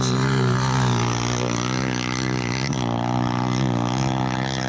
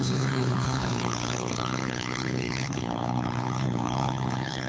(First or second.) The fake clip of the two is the second